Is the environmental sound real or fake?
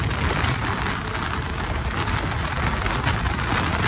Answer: real